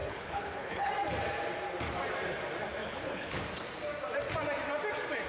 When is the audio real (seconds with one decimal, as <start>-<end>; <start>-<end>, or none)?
0.9-2.8; 3.4-5.3